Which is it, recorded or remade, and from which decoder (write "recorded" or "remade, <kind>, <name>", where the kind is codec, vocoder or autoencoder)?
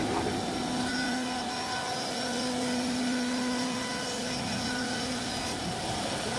recorded